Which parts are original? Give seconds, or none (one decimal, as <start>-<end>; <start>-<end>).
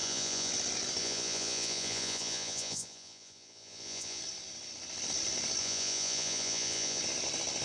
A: 0.5-1.0; 4.2-5.6; 7.0-7.6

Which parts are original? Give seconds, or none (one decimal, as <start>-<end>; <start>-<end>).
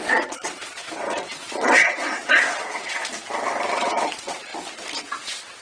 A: 3.0-3.7; 4.5-5.0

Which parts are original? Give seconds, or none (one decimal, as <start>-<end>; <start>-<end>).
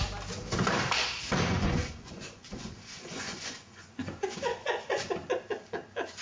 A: 0.0-1.5; 5.1-6.2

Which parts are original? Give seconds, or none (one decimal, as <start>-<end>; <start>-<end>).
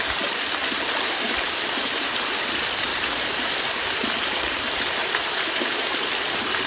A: 2.9-3.4; 5.0-6.7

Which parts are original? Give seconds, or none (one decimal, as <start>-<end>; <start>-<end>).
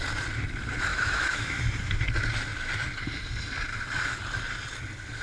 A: 0.0-0.9; 1.6-5.2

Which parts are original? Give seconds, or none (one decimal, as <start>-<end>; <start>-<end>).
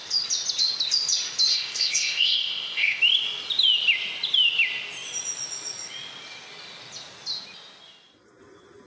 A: 0.0-1.5; 3.0-8.9